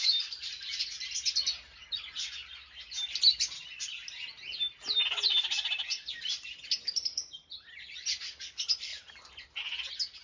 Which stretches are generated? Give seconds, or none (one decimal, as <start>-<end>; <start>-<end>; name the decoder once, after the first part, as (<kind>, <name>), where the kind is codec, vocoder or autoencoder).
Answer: none